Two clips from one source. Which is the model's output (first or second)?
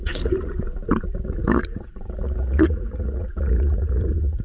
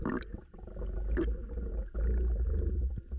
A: first